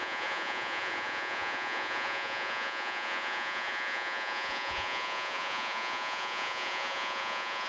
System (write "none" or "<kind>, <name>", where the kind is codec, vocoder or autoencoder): vocoder, Vocos